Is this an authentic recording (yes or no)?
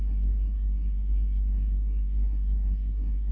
no